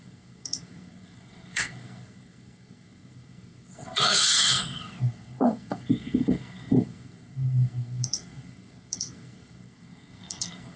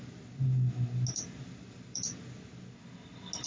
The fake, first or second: first